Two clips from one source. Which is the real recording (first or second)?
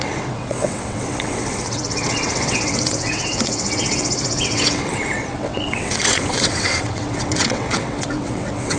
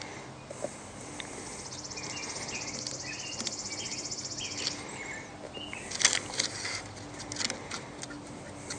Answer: second